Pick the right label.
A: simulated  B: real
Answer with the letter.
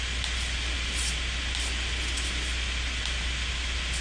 B